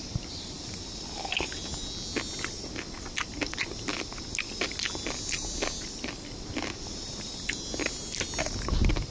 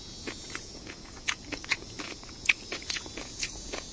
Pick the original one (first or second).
first